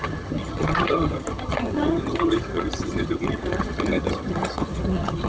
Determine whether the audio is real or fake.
fake